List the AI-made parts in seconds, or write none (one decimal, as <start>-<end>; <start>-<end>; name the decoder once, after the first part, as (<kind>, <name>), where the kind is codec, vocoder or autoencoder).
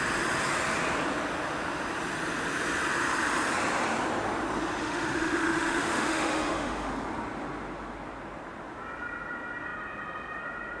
4.8-6.9 (autoencoder, DAC-VAE)